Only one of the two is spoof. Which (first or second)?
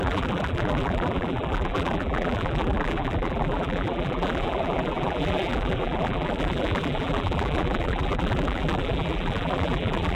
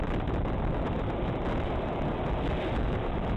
first